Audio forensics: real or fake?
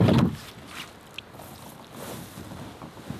real